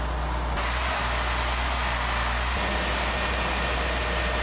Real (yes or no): yes